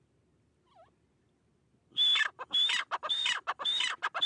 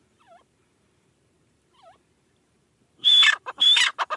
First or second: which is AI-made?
second